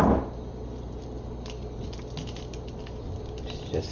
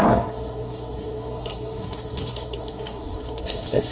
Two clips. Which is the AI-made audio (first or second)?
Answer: second